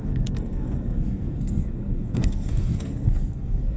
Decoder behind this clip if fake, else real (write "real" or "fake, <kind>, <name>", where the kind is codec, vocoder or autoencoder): fake, codec, SNAC